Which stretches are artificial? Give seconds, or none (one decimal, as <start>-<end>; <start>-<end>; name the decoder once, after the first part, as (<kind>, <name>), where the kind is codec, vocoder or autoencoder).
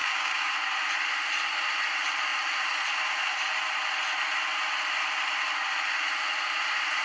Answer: 0.0-0.5 (codec, DAC)